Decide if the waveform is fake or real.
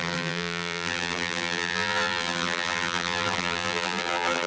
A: fake